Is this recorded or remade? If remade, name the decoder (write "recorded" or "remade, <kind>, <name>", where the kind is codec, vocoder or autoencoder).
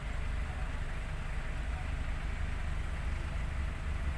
recorded